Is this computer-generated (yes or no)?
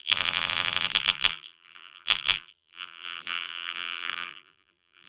yes